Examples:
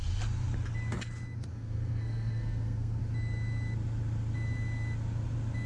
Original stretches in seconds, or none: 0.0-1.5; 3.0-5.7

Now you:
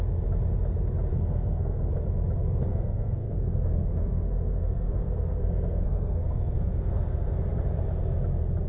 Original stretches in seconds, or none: 0.0-1.1; 1.9-2.7; 7.4-8.7